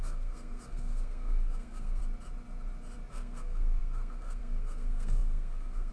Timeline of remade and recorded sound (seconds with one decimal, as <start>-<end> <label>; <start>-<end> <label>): 0.0-2.0 remade; 2.0-3.1 recorded; 3.1-5.9 remade